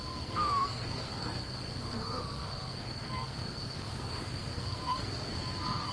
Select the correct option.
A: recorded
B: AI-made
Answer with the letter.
B